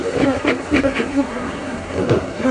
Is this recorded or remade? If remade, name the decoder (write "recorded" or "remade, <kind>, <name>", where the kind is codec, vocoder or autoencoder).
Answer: remade, codec, SNAC